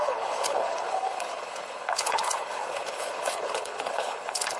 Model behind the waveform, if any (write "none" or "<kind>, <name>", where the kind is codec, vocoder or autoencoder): codec, HILCodec